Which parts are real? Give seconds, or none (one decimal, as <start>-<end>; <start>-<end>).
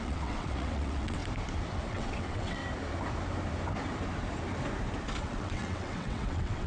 1.2-1.9; 2.6-5.2